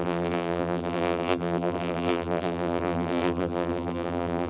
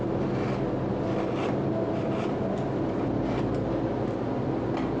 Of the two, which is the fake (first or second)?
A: first